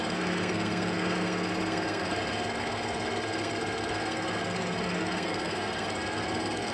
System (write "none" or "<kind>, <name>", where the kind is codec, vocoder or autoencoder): codec, SNAC